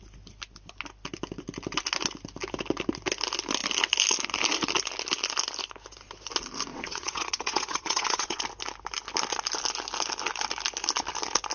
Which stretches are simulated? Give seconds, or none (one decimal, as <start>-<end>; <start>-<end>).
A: 6.7-8.4